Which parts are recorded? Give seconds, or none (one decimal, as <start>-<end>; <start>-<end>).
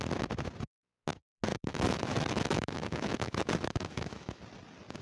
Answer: 0.0-1.5; 4.4-5.0